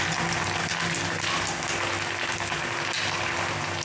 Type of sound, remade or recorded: recorded